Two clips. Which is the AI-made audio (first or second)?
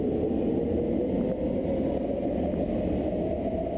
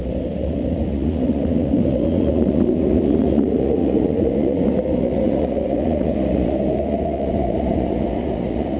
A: second